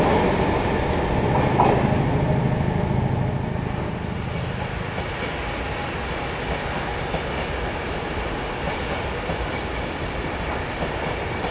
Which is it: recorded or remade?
recorded